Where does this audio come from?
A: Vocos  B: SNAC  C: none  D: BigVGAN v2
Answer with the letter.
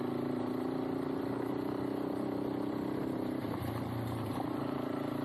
C